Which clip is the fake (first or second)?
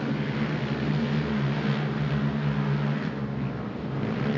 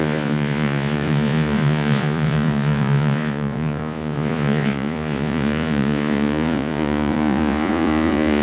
second